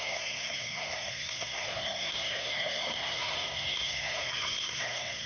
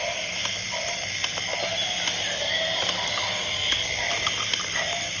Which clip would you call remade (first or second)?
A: first